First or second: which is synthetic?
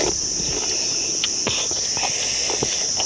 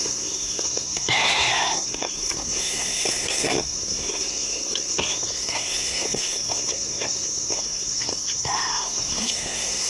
second